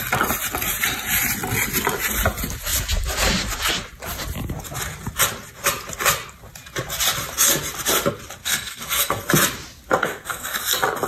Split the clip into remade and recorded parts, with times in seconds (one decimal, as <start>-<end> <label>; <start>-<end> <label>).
0.0-8.4 recorded; 8.4-9.2 remade; 9.2-10.0 recorded; 10.0-10.6 remade; 10.6-11.1 recorded